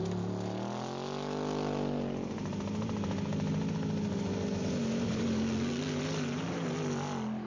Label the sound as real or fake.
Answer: real